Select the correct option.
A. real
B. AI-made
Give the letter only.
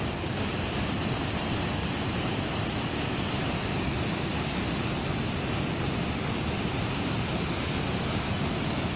A